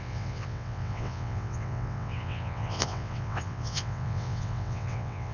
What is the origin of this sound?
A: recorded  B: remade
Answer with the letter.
B